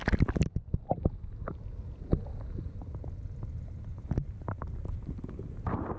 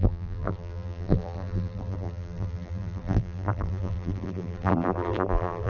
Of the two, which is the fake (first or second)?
second